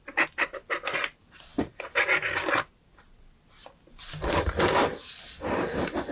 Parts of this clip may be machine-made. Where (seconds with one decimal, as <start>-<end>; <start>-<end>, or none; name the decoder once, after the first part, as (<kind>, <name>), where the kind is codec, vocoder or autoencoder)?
none